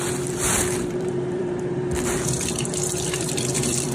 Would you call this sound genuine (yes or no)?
no